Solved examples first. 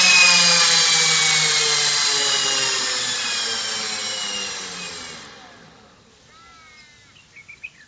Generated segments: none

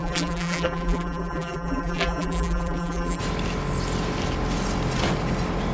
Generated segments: 0.0-3.2

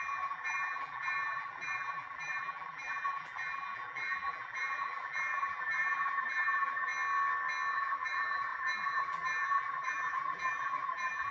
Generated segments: 0.0-6.9; 7.7-11.3

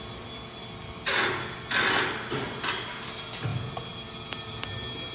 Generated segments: none

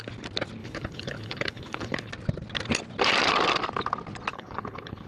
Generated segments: 0.6-2.1; 4.3-5.1